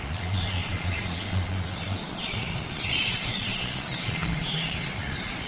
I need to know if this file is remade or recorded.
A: remade